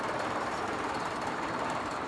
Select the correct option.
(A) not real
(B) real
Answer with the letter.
A